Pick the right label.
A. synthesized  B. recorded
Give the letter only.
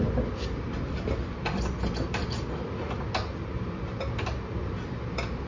B